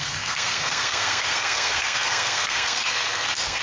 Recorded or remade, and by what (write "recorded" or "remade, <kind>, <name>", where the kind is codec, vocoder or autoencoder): remade, codec, SNAC